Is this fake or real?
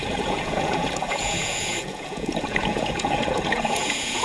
fake